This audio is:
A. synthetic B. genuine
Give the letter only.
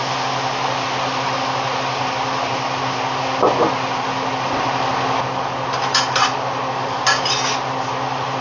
B